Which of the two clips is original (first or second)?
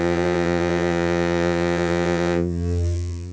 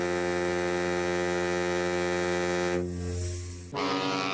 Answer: second